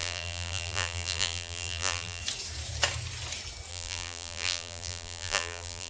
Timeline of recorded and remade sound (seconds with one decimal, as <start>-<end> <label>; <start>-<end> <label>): 0.0-2.2 remade; 2.2-3.7 recorded; 3.7-5.9 remade